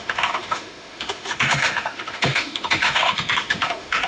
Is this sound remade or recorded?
remade